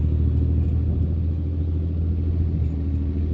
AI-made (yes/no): no